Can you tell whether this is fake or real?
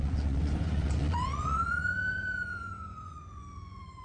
fake